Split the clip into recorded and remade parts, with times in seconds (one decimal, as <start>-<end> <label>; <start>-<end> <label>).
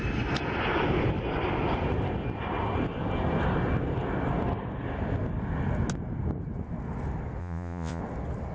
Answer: 0.0-7.4 recorded; 7.4-8.0 remade; 8.0-8.5 recorded